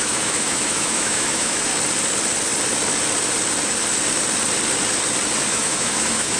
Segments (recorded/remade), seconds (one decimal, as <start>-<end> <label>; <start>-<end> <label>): 0.0-1.7 remade; 1.7-5.5 recorded; 5.5-6.4 remade

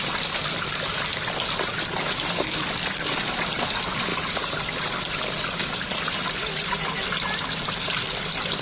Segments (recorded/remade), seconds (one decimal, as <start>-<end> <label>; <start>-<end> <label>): 0.0-4.1 recorded; 4.1-4.6 remade; 4.6-8.6 recorded

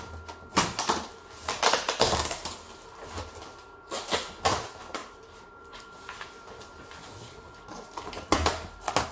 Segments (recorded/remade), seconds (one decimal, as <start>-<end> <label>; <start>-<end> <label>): 0.0-5.0 recorded; 5.0-6.5 remade; 6.5-9.1 recorded

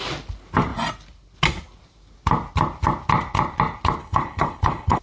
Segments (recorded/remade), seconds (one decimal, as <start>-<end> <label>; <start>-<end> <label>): 0.0-4.0 recorded; 4.0-5.0 remade

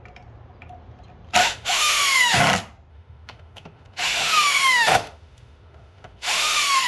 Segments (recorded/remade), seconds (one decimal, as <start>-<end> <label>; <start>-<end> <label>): 0.0-1.4 recorded; 1.4-2.4 remade; 2.4-2.9 recorded; 2.9-6.9 remade

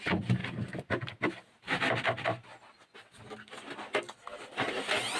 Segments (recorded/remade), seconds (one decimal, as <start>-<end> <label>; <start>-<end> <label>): 0.0-5.2 recorded